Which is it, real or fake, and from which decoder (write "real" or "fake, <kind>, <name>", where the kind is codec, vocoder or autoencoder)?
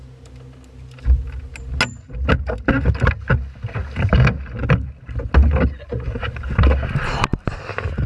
real